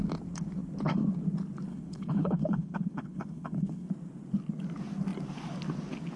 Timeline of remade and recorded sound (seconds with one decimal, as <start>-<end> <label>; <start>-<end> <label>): 0.0-1.7 recorded; 1.7-3.9 remade; 3.9-6.2 recorded